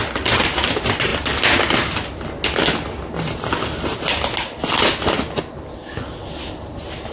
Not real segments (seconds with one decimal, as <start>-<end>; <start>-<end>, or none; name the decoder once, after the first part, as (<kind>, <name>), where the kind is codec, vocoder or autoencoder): none